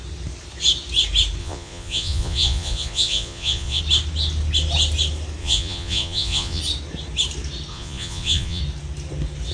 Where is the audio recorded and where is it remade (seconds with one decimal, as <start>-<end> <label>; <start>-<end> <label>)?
0.0-1.4 recorded; 1.4-3.8 remade; 3.8-5.4 recorded; 5.4-6.6 remade; 6.6-7.7 recorded; 7.7-8.6 remade; 8.6-9.5 recorded